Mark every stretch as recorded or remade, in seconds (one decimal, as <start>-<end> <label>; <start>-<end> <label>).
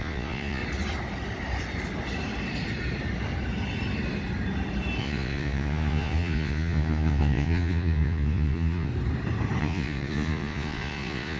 0.0-0.6 remade; 0.6-5.0 recorded; 5.0-8.9 remade; 8.9-9.6 recorded; 9.6-11.4 remade